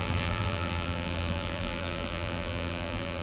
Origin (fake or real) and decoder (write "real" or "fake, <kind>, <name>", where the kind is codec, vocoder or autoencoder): fake, vocoder, BigVGAN v2